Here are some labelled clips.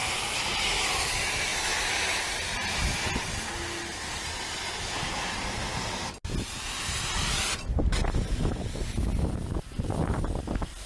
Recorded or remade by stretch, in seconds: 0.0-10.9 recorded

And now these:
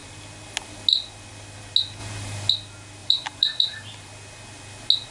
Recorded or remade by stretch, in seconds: 0.0-2.0 recorded; 2.0-2.5 remade; 2.5-3.0 recorded; 3.0-4.1 remade; 4.1-5.1 recorded

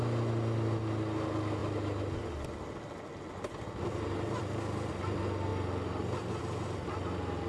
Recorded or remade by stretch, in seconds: 0.0-7.5 recorded

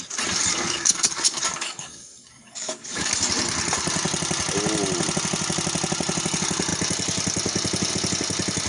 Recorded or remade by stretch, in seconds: 0.0-0.5 recorded; 0.5-3.1 remade; 3.1-8.7 recorded

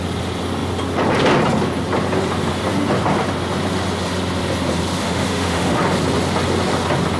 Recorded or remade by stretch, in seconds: 0.0-5.0 recorded; 5.0-5.8 remade; 5.8-7.2 recorded

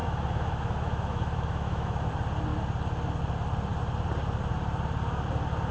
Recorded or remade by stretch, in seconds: 0.0-2.1 remade; 2.1-5.7 recorded

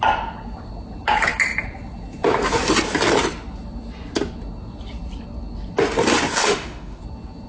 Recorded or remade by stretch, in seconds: 0.0-6.4 recorded; 6.4-7.0 remade; 7.0-7.5 recorded

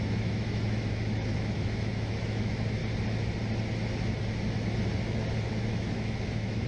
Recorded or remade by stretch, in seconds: 0.0-2.8 remade; 2.8-5.5 recorded; 5.5-6.7 remade